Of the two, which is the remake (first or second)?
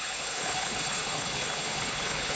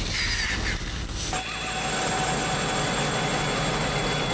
first